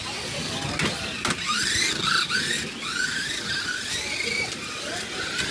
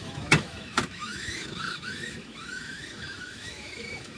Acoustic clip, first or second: first